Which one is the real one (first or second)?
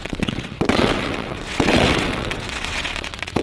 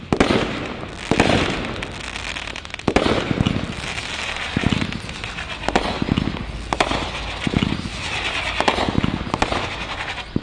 second